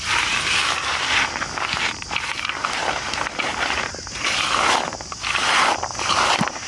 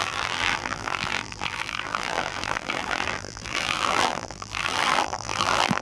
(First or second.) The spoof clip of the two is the second